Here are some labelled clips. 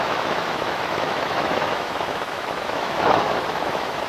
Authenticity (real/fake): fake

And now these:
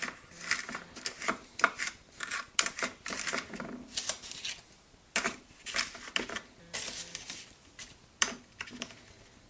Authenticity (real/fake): real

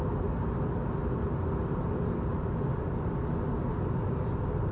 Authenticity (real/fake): real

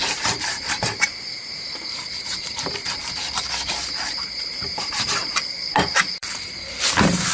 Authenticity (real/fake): fake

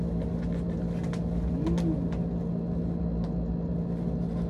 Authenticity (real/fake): real